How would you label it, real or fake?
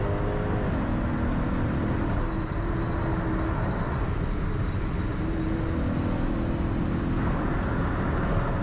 real